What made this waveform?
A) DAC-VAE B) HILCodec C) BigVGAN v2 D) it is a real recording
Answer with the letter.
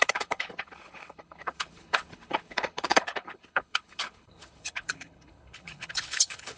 B